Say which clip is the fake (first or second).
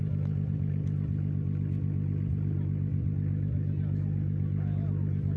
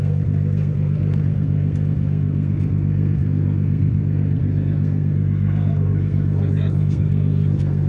second